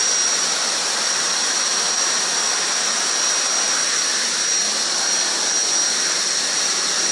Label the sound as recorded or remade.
recorded